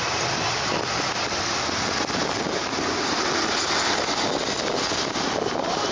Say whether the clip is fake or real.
real